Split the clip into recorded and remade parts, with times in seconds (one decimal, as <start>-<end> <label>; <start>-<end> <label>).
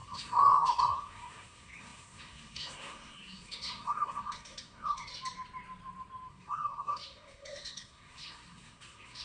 0.0-5.1 remade; 5.1-6.3 recorded; 6.3-9.2 remade